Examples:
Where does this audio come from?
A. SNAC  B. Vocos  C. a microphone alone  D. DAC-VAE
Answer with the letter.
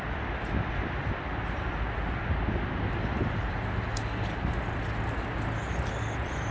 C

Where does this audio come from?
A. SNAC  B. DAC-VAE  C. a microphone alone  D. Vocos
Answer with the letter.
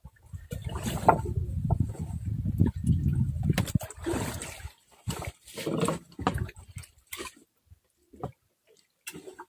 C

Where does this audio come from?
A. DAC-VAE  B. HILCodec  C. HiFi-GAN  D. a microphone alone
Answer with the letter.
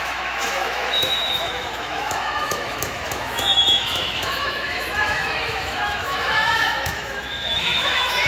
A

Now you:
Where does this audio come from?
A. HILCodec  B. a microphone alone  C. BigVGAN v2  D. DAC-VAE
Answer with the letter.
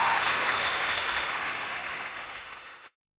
D